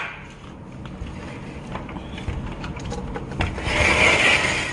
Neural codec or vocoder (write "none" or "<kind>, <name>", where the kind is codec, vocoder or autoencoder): none